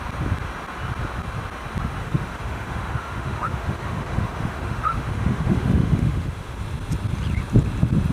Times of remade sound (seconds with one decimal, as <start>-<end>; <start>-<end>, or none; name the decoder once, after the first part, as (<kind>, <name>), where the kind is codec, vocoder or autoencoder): 2.0-6.6 (autoencoder, DAC-VAE)